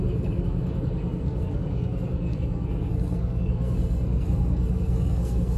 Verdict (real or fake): fake